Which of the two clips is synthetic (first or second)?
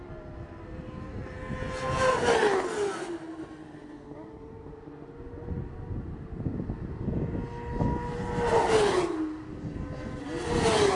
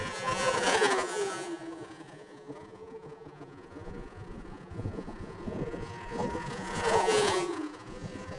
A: second